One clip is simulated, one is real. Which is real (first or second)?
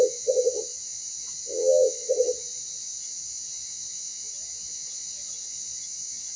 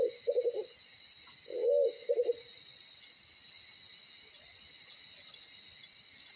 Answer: second